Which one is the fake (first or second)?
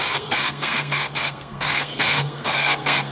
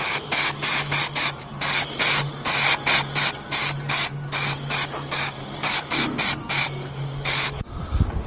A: first